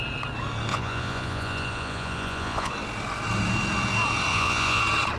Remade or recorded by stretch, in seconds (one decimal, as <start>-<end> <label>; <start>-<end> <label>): 0.0-0.7 recorded; 0.7-2.7 remade; 2.7-4.3 recorded; 4.3-4.8 remade; 4.8-5.2 recorded